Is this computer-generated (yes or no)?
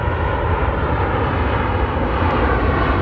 no